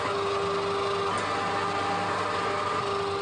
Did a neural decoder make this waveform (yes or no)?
no